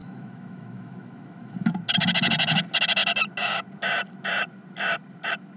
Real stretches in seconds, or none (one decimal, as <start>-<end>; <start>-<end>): 1.7-5.6